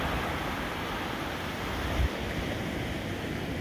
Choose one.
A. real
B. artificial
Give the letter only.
A